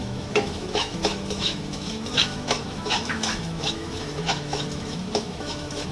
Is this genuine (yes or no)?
no